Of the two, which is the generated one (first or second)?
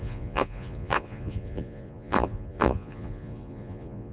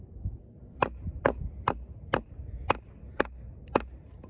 first